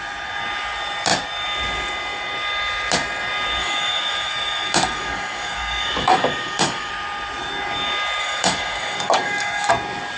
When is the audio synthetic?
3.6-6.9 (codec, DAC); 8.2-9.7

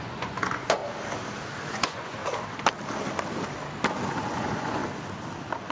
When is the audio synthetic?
0.0-0.8 (vocoder, Vocos); 1.7-2.2; 4.1-4.8

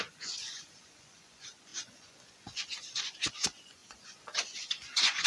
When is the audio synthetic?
0.0-5.3 (vocoder, Vocos)

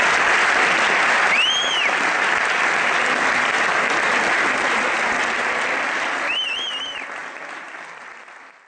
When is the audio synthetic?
7.2-8.0 (vocoder, BigVGAN v2)

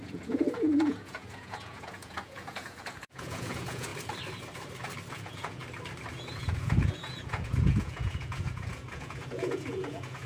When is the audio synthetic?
0.0-3.9 (vocoder, Vocos); 5.1-5.6; 6.1-10.3

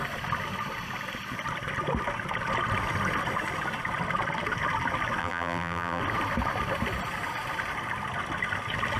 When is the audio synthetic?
5.2-6.0 (vocoder, BigVGAN v2)

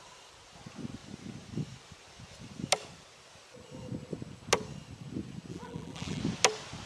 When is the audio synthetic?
5.5-6.2 (vocoder, BigVGAN v2)